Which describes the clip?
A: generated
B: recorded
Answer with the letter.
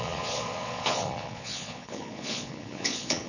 A